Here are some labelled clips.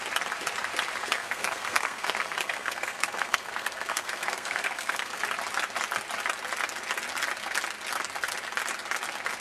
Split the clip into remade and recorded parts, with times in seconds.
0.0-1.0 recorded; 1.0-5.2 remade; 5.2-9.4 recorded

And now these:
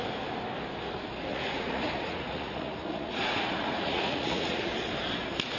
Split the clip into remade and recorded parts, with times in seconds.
0.0-1.3 recorded; 1.3-4.7 remade; 4.7-5.6 recorded

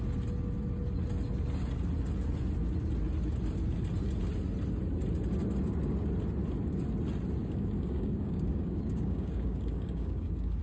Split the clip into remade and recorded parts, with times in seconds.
0.0-7.4 recorded; 7.4-10.6 remade

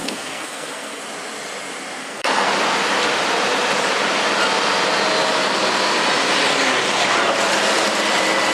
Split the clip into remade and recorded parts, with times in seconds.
0.0-1.0 remade; 1.0-2.0 recorded; 2.0-2.5 remade; 2.5-8.5 recorded

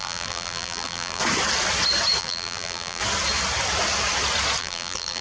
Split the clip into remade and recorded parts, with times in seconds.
0.0-1.2 remade; 1.2-2.2 recorded; 2.2-3.0 remade; 3.0-4.6 recorded; 4.6-5.2 remade

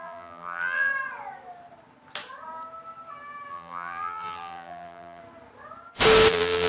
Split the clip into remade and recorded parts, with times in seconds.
0.0-0.9 remade; 0.9-3.5 recorded; 3.5-5.2 remade; 5.2-6.3 recorded; 6.3-6.7 remade